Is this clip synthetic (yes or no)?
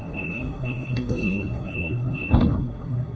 yes